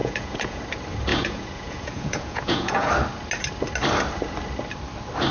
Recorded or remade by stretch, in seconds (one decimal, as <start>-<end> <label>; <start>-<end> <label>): 0.0-0.6 remade; 0.6-1.1 recorded; 1.1-2.9 remade; 2.9-5.3 recorded